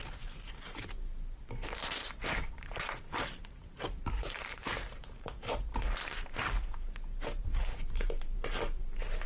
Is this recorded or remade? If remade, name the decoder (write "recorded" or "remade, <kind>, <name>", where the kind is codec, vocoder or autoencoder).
remade, vocoder, BigVGAN v2